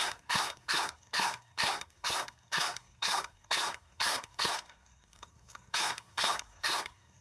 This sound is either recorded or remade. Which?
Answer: remade